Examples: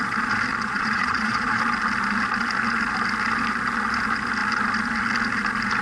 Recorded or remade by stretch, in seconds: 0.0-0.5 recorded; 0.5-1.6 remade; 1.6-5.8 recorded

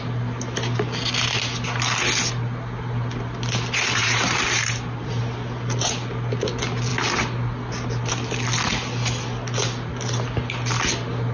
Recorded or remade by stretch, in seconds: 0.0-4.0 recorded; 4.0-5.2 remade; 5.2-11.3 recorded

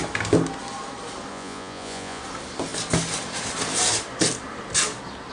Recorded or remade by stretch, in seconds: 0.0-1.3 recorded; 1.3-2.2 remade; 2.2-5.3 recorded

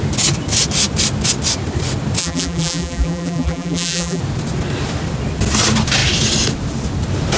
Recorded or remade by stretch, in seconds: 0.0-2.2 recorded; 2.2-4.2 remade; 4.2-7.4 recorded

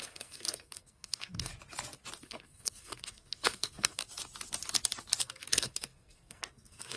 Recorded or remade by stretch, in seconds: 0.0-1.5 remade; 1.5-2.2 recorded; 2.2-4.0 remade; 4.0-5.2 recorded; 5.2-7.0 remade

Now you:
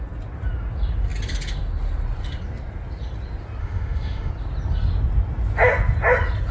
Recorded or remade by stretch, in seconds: 0.0-3.6 recorded; 3.6-4.3 remade; 4.3-6.5 recorded

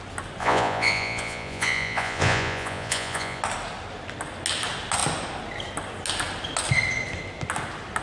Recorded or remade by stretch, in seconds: 0.0-0.4 recorded; 0.4-3.4 remade; 3.4-8.0 recorded